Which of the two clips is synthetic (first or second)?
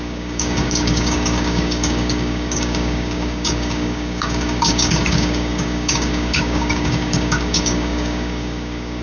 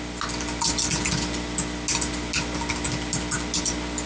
first